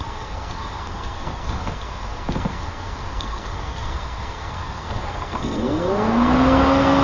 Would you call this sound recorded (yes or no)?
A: no